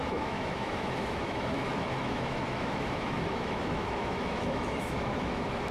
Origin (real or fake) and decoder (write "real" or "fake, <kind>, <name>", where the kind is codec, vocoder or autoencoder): fake, autoencoder, DAC-VAE